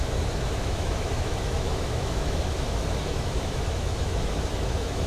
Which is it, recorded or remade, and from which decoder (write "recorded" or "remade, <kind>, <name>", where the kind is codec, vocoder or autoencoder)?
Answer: remade, autoencoder, DAC-VAE